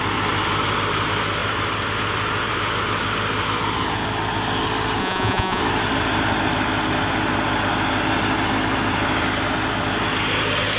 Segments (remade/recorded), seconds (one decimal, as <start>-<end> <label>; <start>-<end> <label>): 0.0-5.0 recorded; 5.0-5.6 remade; 5.6-10.8 recorded